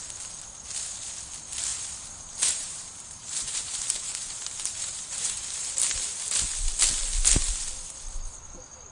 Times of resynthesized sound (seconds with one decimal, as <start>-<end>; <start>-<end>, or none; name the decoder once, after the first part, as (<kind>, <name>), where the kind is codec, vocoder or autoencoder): 1.7-5.7 (vocoder, BigVGAN v2)